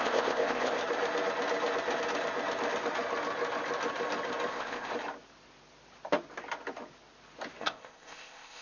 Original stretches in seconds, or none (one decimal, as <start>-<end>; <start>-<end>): 0.8-4.5; 4.9-7.6

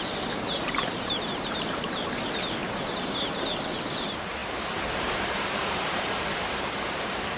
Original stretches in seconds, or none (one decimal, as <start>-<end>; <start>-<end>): 2.6-3.8

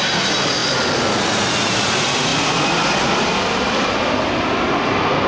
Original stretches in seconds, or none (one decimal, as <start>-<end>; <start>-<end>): 0.0-5.3

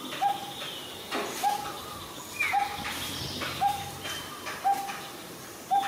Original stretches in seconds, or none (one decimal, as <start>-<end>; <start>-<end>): 0.0-2.7; 4.8-5.9

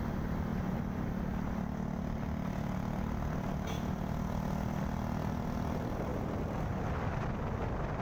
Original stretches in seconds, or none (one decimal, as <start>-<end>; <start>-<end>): 0.0-8.0

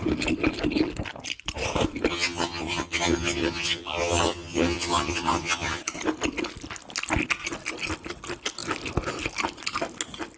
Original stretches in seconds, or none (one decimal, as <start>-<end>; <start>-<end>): 0.0-2.1; 5.8-10.4